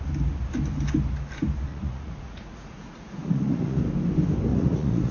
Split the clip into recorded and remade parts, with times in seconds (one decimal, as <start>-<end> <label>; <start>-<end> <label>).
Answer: 0.0-1.7 recorded; 1.7-3.8 remade; 3.8-4.5 recorded; 4.5-5.1 remade